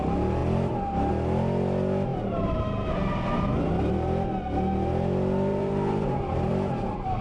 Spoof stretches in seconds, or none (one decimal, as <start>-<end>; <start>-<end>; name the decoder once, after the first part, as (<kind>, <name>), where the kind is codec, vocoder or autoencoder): 2.1-3.9 (vocoder, BigVGAN v2); 5.5-6.5